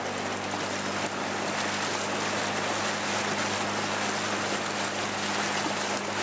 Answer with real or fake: real